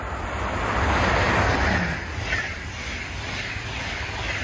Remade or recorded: recorded